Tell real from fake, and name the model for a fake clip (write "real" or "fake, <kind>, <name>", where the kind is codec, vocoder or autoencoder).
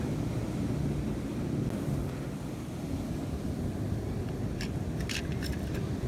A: real